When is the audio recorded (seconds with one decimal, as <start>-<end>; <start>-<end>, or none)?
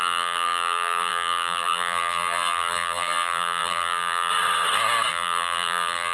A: 4.3-5.1